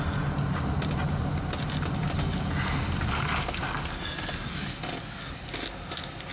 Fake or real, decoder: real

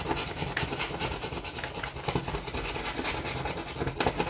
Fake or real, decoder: real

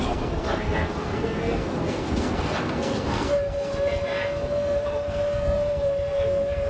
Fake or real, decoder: fake, codec, SNAC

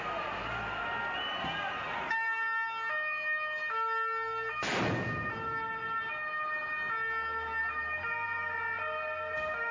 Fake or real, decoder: real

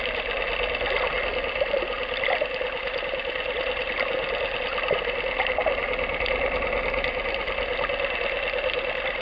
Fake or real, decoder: real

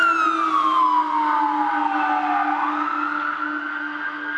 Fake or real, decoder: real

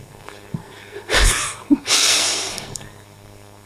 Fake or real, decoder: fake, codec, SNAC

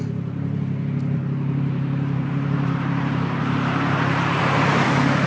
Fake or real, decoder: fake, vocoder, BigVGAN v2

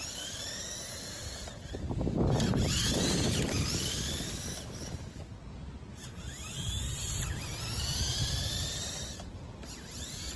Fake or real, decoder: real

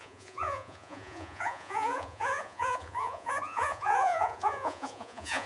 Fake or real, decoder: fake, vocoder, Vocos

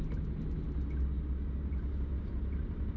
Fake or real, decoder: real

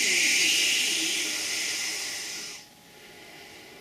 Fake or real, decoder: real